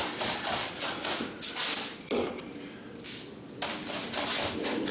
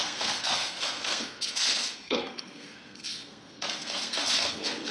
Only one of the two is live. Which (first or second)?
first